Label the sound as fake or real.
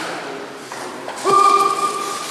real